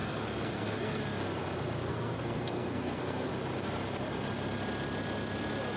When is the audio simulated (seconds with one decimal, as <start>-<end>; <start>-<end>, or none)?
0.0-1.0; 1.9-3.3